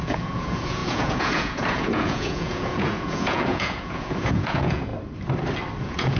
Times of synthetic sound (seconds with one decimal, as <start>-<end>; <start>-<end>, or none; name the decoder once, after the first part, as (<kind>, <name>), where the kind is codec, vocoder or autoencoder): 0.0-4.9 (vocoder, Vocos); 5.8-6.2